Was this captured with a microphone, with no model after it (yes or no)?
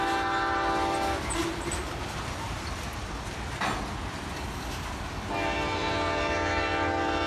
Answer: yes